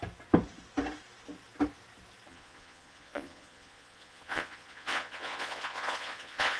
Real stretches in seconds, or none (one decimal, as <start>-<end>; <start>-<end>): 0.0-2.3